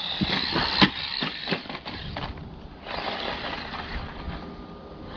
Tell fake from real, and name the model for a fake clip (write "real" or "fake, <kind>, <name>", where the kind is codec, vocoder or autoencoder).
real